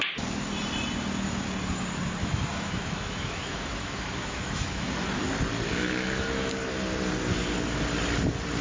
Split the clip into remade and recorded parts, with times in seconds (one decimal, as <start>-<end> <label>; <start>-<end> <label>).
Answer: 0.0-2.2 recorded; 2.2-4.9 remade; 4.9-5.7 recorded; 5.7-6.5 remade; 6.5-8.6 recorded